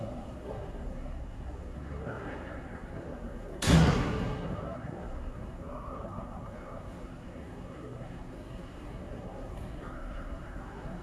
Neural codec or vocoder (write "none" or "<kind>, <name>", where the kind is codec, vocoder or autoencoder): codec, SNAC